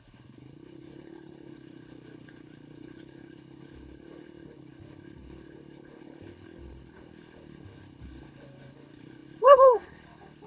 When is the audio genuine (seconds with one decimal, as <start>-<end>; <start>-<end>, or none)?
none